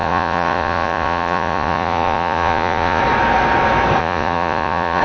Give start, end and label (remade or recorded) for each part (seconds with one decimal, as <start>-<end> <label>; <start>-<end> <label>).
0.0-3.0 remade; 3.0-4.0 recorded; 4.0-5.0 remade